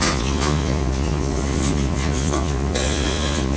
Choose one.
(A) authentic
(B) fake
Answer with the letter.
B